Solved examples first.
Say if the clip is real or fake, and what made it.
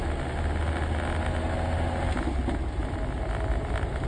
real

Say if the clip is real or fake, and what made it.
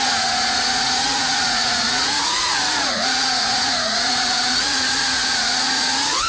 fake, vocoder, Vocos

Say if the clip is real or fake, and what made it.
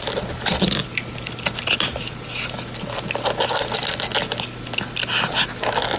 real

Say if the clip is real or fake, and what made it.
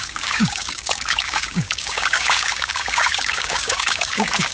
fake, codec, DAC